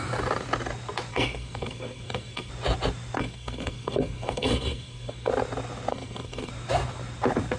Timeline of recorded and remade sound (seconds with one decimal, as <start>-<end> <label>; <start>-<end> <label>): 0.0-1.1 recorded; 1.1-2.5 remade; 2.5-3.2 recorded; 3.2-5.3 remade; 5.3-5.9 recorded; 5.9-6.5 remade; 6.5-7.6 recorded